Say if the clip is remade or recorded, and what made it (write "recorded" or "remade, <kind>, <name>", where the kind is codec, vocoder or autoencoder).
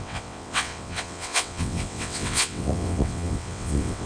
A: remade, vocoder, WaveNeXt